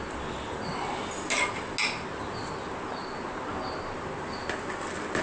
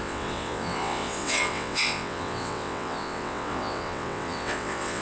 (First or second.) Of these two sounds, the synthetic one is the second